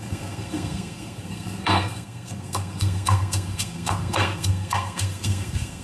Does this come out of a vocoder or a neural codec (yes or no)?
yes